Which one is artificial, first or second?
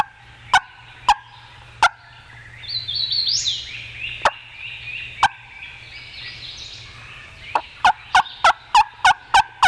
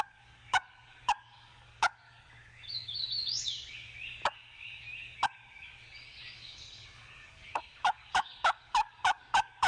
second